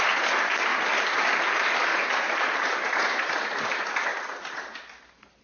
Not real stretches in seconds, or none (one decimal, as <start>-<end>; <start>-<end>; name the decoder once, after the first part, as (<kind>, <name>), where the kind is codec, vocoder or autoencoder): 0.0-0.7 (vocoder, BigVGAN v2); 2.2-4.1